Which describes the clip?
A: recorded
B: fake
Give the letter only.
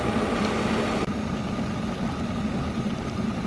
A